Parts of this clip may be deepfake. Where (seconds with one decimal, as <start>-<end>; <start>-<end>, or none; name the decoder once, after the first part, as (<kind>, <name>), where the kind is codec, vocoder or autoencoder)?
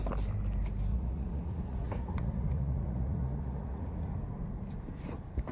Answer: 0.9-4.1 (vocoder, Vocos)